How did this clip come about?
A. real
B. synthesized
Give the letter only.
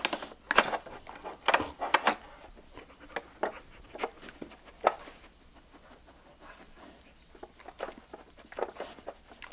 A